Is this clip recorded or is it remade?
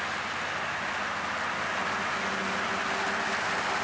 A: recorded